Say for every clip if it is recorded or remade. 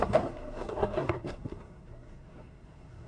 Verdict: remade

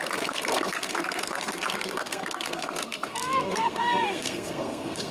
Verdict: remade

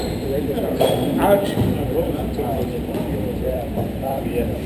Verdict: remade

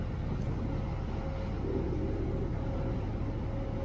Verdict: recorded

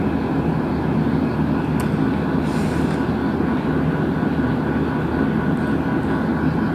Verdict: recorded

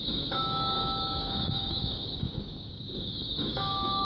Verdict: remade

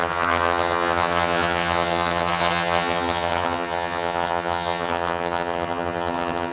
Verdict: remade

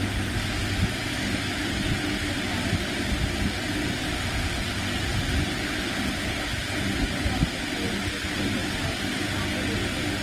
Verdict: recorded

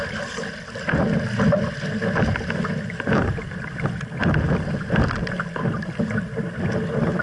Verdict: recorded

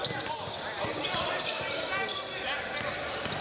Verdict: recorded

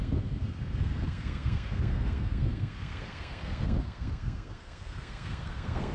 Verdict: remade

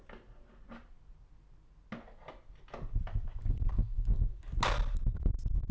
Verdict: recorded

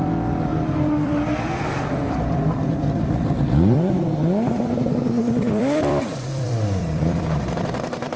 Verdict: remade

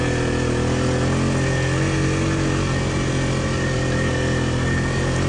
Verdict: recorded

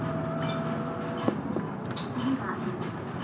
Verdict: recorded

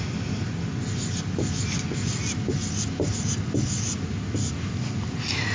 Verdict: recorded